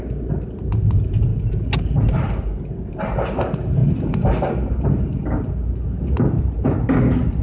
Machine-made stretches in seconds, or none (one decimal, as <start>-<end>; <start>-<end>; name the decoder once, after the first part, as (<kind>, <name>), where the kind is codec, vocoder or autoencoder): none